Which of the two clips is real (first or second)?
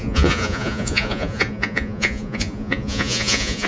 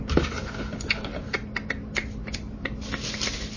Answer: second